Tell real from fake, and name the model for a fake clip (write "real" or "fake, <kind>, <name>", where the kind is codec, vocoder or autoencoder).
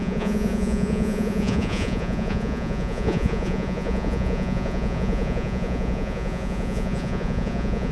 fake, vocoder, Vocos